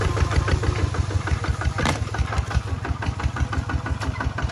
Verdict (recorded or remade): remade